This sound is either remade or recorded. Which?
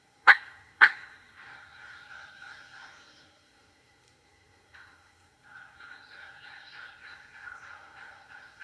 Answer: remade